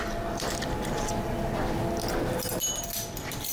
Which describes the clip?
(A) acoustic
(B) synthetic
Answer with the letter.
A